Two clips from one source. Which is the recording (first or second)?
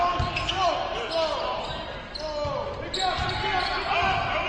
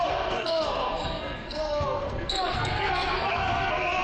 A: first